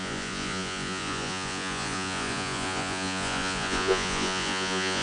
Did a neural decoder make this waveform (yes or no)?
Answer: yes